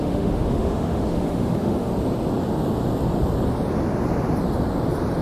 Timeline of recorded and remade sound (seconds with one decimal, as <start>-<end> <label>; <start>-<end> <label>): 0.0-1.9 remade; 1.9-5.2 recorded